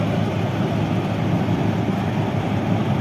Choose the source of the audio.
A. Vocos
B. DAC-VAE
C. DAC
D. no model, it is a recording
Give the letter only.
D